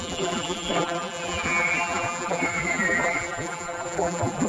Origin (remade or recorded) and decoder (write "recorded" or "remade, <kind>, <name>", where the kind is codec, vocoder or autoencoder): remade, vocoder, BigVGAN v2